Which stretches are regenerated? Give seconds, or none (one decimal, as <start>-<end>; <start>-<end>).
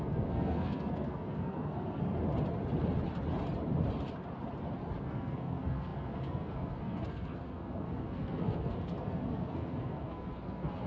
0.0-2.1; 5.0-10.9